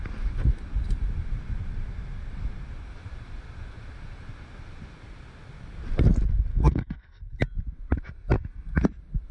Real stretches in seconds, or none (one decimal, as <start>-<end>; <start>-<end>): 0.0-6.5; 7.2-9.3